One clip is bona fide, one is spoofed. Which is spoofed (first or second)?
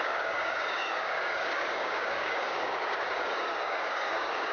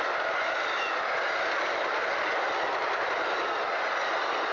first